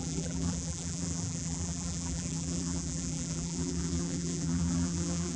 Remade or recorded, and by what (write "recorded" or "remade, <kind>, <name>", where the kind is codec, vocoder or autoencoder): remade, vocoder, BigVGAN v2